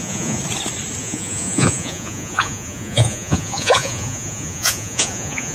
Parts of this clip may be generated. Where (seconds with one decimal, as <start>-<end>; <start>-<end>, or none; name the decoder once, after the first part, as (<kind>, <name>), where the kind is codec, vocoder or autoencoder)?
0.0-0.4 (vocoder, Vocos); 1.0-5.5